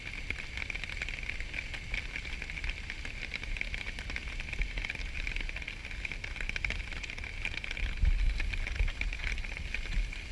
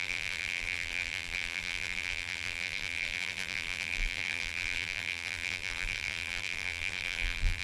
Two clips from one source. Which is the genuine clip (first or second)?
first